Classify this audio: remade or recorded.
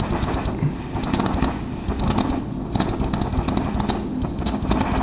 recorded